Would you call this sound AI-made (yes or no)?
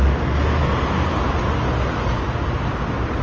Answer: no